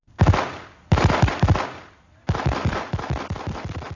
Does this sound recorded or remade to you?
recorded